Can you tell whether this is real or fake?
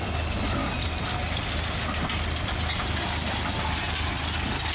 real